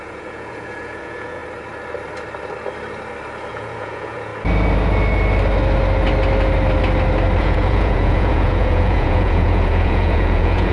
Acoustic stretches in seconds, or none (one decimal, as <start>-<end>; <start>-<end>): 1.4-3.5; 4.3-7.4